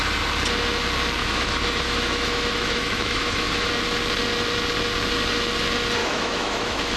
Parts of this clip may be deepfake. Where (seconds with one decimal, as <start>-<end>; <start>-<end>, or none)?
1.2-3.7; 6.0-7.0